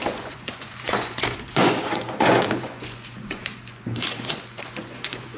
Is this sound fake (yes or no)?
yes